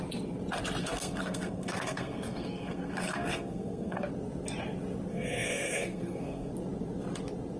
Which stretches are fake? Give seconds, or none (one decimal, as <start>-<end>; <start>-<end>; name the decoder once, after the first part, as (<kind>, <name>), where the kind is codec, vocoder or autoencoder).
0.8-4.1 (codec, SNAC); 5.1-6.5